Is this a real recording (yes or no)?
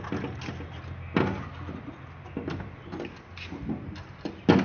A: yes